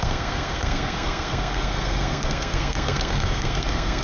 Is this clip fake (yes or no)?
yes